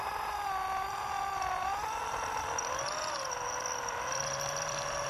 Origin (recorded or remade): recorded